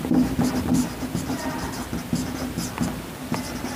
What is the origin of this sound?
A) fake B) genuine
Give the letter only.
A